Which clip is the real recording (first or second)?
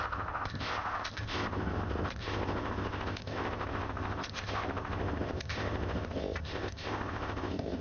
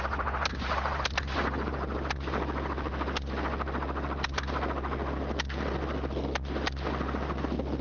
second